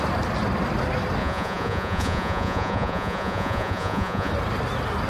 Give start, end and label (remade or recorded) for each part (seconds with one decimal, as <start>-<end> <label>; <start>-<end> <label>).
0.0-1.2 recorded; 1.2-4.3 remade; 4.3-5.1 recorded

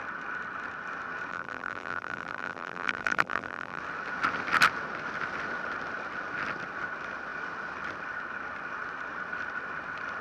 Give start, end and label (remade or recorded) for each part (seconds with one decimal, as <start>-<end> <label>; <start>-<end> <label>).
0.0-1.3 recorded; 1.3-3.8 remade; 3.8-10.2 recorded

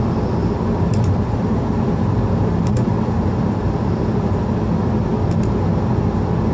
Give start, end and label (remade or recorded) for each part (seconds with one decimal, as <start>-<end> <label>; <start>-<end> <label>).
0.0-0.4 recorded; 0.4-4.3 remade; 4.3-6.5 recorded

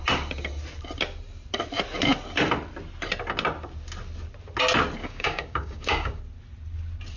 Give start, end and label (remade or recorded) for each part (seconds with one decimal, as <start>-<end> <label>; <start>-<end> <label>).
0.0-5.0 recorded; 5.0-6.2 remade; 6.2-7.2 recorded